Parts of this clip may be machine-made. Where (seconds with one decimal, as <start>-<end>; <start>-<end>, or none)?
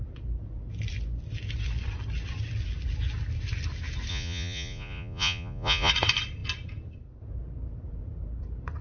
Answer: 4.1-5.9